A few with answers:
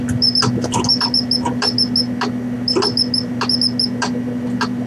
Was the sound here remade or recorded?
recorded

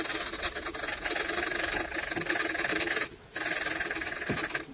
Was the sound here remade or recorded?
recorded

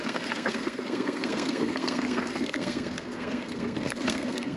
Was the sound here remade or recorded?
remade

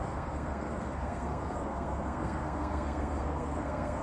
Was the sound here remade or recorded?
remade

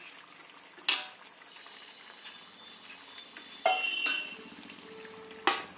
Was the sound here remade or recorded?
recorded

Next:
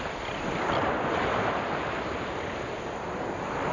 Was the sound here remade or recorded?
recorded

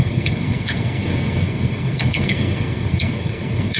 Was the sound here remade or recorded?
remade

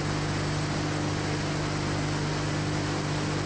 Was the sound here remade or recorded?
recorded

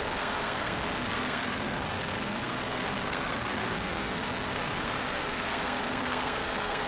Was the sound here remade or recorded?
remade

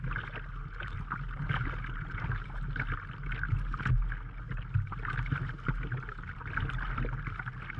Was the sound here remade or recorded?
recorded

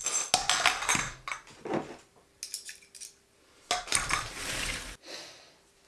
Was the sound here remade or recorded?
recorded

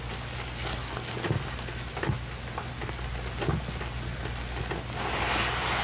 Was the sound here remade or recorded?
recorded